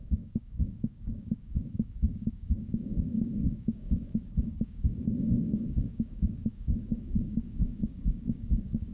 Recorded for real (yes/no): no